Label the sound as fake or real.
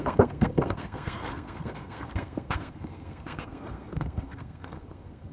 fake